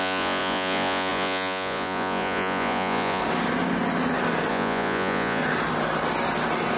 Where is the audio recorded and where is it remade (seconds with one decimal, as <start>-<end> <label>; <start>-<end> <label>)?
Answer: 0.0-3.2 remade; 3.2-4.5 recorded; 4.5-5.4 remade; 5.4-6.8 recorded